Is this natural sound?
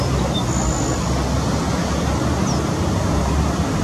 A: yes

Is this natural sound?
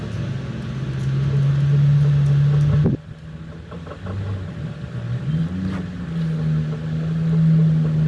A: yes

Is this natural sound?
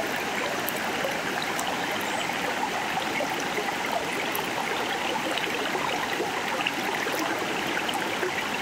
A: yes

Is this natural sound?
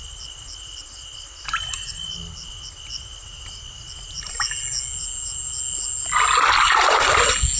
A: yes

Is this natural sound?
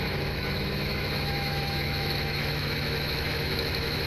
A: no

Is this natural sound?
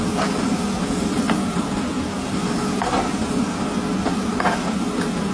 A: yes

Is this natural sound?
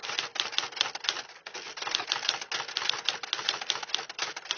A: yes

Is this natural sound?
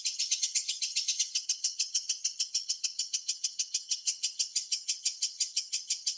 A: no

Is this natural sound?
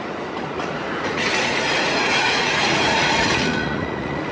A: no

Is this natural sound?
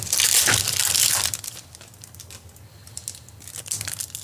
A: yes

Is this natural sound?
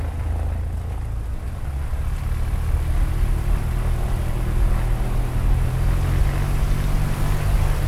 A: yes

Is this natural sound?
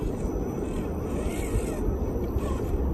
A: yes